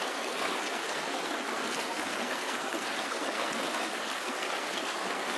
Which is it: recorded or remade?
remade